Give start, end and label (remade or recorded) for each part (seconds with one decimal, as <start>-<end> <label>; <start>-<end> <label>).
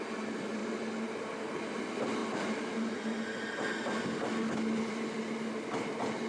0.0-6.3 recorded